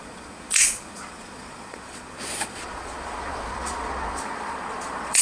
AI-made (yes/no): yes